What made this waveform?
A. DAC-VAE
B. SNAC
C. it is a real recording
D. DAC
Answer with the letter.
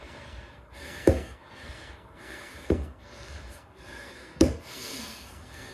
B